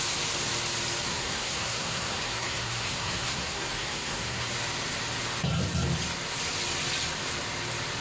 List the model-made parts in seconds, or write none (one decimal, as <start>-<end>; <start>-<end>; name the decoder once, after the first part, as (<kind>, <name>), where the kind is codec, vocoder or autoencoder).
1.1-4.5 (codec, SNAC)